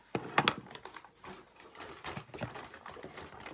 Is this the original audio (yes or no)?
yes